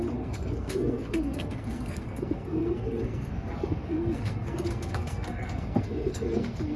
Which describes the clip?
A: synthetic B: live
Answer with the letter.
A